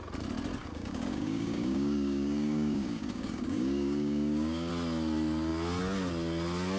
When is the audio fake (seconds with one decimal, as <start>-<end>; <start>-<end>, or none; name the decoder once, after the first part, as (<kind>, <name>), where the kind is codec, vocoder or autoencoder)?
0.6-4.7 (codec, DAC)